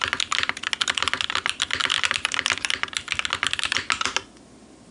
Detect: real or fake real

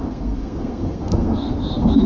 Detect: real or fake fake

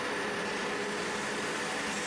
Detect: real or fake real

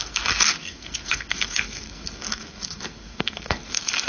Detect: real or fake fake